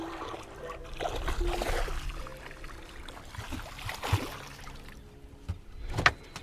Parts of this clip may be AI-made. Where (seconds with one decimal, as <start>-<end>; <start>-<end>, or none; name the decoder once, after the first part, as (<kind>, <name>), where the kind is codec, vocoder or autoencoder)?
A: none